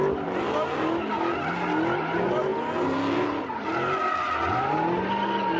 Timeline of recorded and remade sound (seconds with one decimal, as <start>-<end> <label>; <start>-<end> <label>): 0.0-5.6 recorded